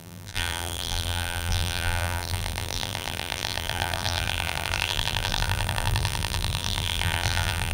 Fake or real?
fake